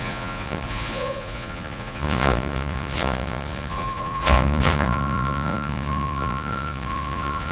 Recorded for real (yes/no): no